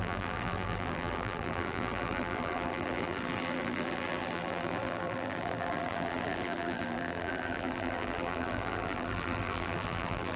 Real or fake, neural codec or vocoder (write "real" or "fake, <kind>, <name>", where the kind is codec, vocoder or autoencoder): fake, vocoder, BigVGAN v2